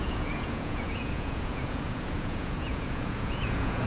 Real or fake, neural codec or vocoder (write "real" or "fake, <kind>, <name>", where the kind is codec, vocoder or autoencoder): fake, vocoder, Vocos